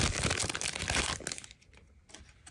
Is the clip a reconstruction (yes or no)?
no